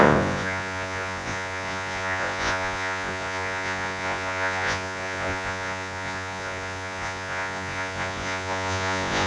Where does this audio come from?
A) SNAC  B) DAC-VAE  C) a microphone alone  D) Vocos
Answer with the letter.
D